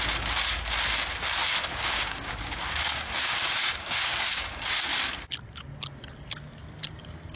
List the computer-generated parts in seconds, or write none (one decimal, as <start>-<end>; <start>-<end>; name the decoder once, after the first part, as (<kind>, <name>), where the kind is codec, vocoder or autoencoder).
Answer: 1.7-4.7 (codec, DAC)